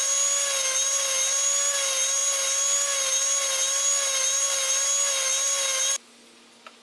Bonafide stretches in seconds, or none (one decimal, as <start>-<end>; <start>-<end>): 0.0-6.8